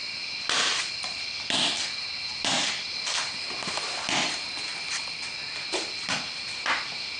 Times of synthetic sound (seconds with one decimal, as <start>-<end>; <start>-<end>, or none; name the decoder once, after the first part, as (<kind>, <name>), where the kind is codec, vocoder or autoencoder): none